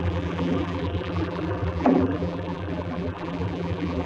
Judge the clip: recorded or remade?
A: remade